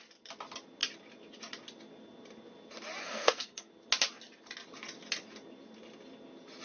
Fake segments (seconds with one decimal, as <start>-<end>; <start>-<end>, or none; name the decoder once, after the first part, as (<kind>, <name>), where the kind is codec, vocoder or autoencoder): 3.0-3.7 (codec, SNAC)